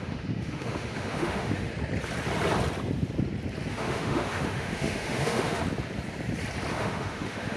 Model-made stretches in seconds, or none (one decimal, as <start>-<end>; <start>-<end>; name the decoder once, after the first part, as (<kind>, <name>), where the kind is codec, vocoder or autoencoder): 0.0-1.7 (autoencoder, DAC-VAE); 3.7-5.6; 6.7-7.6